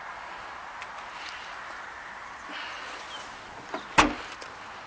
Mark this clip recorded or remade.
recorded